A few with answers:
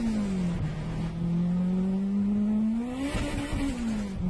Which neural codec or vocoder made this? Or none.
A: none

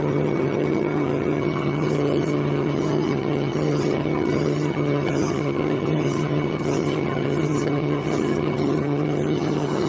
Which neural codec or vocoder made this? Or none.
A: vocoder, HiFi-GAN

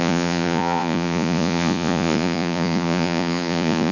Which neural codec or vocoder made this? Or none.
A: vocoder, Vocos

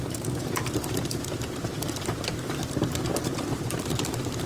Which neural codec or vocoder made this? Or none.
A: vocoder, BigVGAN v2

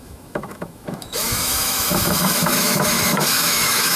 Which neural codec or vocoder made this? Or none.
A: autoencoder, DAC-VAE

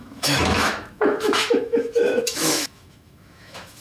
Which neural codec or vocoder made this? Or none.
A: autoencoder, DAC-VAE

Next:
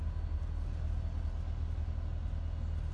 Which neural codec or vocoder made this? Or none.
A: none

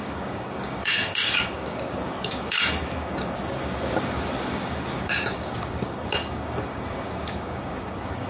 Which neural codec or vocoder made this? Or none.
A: codec, DAC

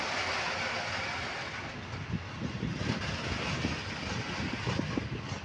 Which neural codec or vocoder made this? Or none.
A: none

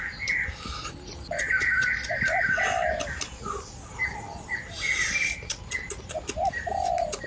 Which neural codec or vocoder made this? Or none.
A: none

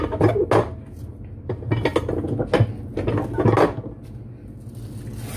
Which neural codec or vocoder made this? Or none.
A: none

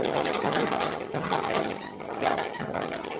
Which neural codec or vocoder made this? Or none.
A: vocoder, HiFi-GAN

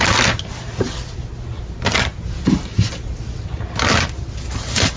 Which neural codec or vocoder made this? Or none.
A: none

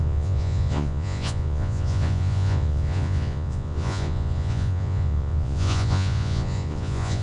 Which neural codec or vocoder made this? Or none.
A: vocoder, Vocos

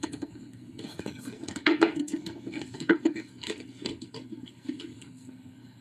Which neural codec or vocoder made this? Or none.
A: codec, SNAC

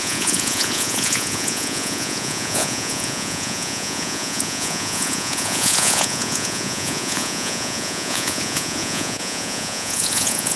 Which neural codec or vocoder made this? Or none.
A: vocoder, Vocos